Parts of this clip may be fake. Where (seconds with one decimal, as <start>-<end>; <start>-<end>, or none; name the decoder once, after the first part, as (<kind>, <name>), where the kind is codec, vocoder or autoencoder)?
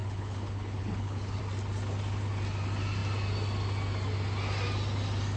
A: 0.0-1.4 (codec, HILCodec)